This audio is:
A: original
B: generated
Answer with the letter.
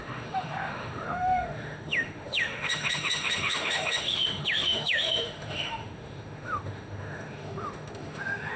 B